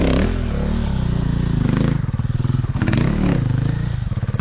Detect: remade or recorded recorded